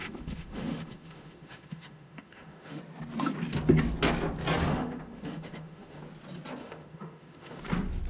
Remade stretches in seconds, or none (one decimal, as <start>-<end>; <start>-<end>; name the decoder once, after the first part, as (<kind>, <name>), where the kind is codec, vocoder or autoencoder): 0.0-2.8 (autoencoder, DAC-VAE); 4.7-6.0; 6.6-7.6